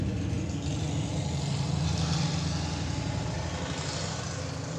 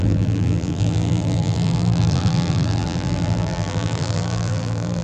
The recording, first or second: first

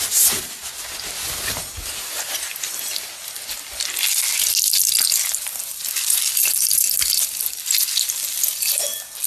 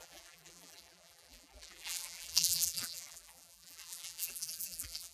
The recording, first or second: first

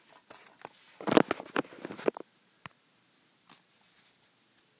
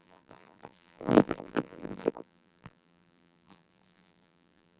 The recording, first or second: first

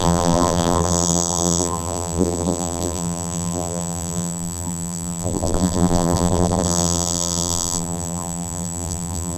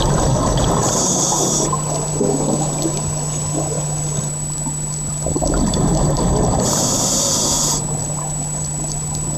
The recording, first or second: second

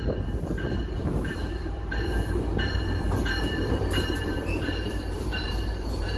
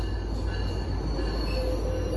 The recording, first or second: second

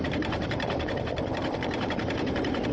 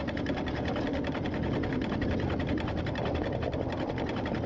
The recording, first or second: second